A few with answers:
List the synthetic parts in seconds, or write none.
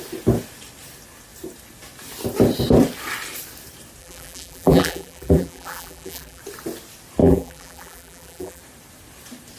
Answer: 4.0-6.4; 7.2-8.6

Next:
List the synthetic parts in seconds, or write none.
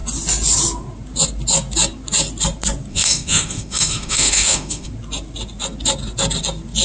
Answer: 2.9-4.9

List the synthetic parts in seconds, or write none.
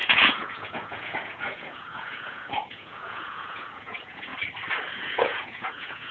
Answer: 0.0-4.3; 4.9-6.1